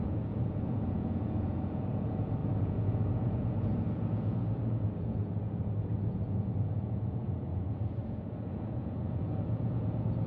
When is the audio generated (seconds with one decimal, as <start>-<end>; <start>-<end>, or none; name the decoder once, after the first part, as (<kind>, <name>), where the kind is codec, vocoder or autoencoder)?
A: 0.0-10.3 (vocoder, Vocos)